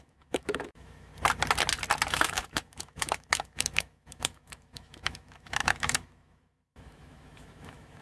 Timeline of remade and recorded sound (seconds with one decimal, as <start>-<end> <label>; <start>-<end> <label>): 0.0-1.1 remade; 1.1-2.1 recorded; 2.1-8.0 remade